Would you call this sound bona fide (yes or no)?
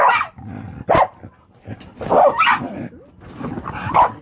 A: yes